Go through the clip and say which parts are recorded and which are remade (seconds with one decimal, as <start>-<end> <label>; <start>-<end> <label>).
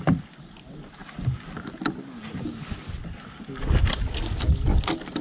0.0-5.2 recorded